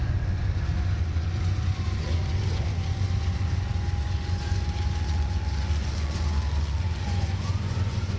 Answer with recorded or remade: remade